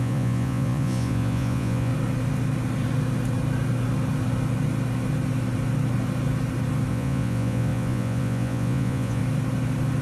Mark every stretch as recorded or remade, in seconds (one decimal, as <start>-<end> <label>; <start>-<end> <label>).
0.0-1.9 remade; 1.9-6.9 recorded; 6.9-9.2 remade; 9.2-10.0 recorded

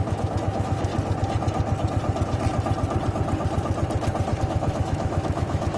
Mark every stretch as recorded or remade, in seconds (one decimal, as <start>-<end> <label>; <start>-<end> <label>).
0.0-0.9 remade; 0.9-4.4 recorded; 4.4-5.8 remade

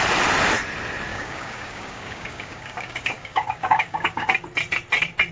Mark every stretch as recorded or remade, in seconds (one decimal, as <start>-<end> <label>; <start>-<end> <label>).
0.0-1.1 recorded; 1.1-4.3 remade; 4.3-5.3 recorded